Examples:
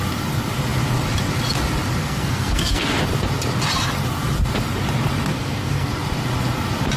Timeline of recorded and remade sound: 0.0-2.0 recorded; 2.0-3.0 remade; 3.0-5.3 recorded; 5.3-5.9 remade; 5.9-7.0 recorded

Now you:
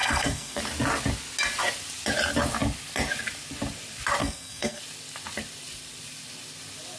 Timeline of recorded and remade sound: 0.0-0.6 remade; 0.6-4.2 recorded; 4.2-4.8 remade; 4.8-7.0 recorded

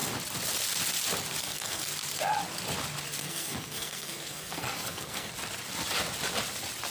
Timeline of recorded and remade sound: 0.0-1.4 recorded; 1.4-1.9 remade; 1.9-3.2 recorded; 3.2-5.3 remade; 5.3-6.9 recorded